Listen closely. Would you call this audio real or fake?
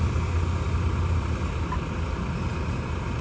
real